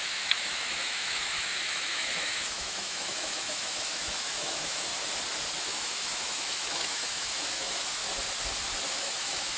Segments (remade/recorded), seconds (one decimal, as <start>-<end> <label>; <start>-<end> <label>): 0.0-4.9 remade; 4.9-5.6 recorded; 5.6-8.0 remade; 8.0-8.9 recorded; 8.9-9.6 remade